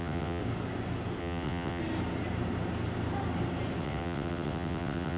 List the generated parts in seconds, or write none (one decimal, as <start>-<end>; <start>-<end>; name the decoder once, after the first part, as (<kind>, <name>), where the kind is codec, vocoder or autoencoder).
0.0-0.4 (vocoder, WaveNeXt); 1.2-1.8; 3.8-5.2